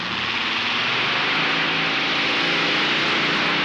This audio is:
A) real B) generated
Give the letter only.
A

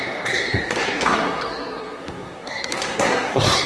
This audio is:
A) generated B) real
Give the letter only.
A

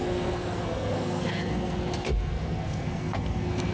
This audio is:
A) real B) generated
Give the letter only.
B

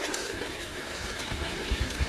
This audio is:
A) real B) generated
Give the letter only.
B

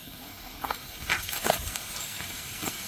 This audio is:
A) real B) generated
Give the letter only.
B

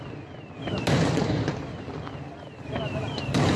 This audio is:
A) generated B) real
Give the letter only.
B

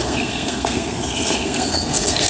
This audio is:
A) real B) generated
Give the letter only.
B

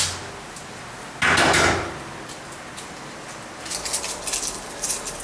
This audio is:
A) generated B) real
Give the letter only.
B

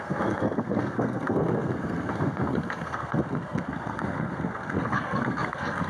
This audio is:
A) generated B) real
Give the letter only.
A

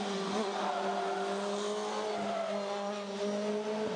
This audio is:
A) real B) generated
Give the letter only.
A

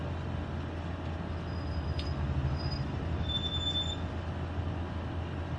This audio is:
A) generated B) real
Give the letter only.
B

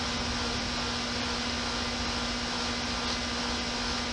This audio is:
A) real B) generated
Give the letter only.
A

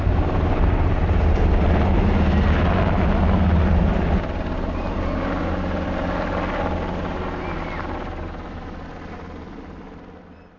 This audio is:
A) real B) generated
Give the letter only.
A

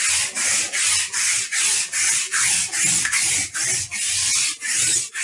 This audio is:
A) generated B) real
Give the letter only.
B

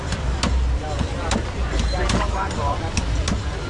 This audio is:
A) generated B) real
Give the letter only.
B